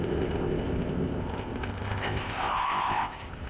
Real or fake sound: fake